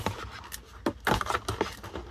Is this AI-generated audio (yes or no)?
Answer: no